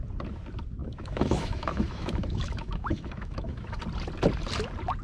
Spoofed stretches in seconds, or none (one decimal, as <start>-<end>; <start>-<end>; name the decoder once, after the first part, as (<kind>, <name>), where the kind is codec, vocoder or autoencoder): 0.8-3.8 (autoencoder, DAC-VAE)